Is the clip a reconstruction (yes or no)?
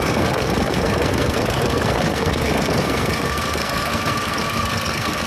yes